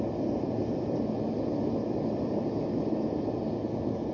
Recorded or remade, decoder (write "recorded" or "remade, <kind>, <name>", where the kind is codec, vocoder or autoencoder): recorded